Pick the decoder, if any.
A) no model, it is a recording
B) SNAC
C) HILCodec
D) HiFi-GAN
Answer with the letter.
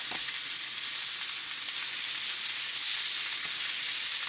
A